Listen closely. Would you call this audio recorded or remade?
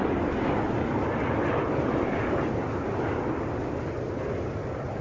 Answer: recorded